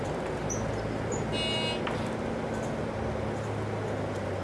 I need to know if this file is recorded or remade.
recorded